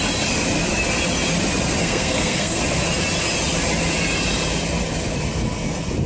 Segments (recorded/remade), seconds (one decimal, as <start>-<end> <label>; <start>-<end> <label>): 0.0-1.8 recorded; 1.8-2.6 remade; 2.6-6.1 recorded